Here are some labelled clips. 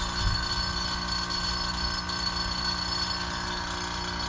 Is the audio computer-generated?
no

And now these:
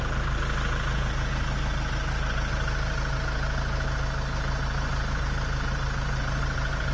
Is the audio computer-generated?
no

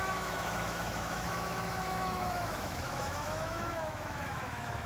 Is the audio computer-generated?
yes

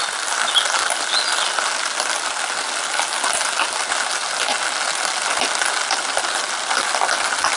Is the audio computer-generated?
no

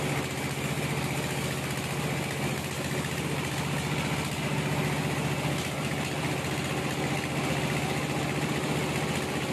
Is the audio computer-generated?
no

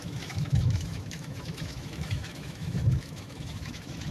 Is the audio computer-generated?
yes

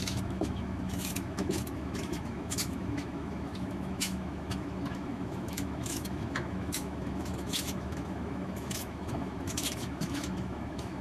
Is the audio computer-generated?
yes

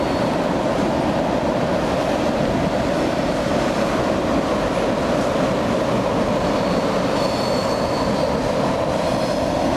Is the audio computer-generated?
no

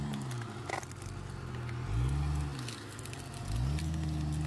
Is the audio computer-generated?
no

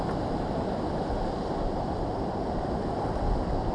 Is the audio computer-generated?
no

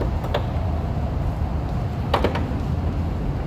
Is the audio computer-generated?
no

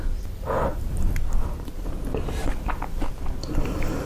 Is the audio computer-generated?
no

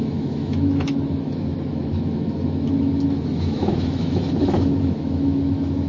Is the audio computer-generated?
yes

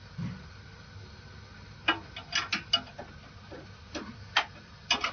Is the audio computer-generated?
no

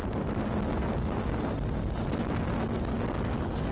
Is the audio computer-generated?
no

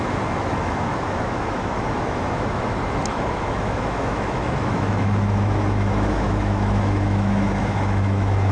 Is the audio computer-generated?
yes